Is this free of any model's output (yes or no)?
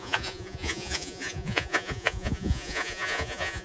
no